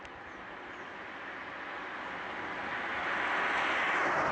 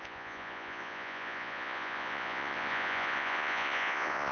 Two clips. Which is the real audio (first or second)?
first